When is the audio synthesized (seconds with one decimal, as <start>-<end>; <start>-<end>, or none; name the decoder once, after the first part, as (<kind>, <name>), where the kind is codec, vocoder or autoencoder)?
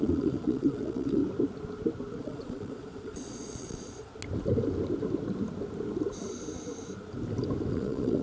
0.0-1.2 (vocoder, Vocos); 2.2-4.1; 7.7-8.2